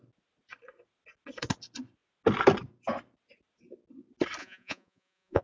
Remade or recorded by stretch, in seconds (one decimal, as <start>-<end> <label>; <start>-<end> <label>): 0.0-4.4 recorded; 4.4-5.4 remade